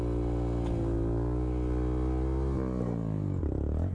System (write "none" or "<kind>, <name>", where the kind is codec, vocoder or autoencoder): none